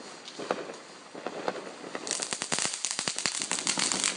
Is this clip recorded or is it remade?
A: recorded